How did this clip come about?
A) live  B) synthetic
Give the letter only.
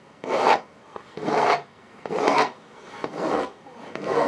B